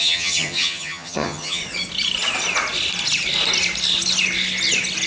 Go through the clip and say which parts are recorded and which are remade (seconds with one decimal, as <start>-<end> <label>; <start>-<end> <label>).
0.0-1.6 remade; 1.6-5.1 recorded